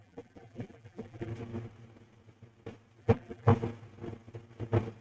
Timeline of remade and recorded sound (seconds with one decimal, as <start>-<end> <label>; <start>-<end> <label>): 0.0-1.3 remade; 1.3-3.0 recorded; 3.0-3.5 remade; 3.5-5.0 recorded